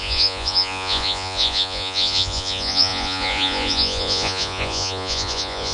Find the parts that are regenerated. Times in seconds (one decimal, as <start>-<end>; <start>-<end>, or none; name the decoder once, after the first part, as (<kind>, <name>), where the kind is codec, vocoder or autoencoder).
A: 0.0-5.7 (vocoder, Vocos)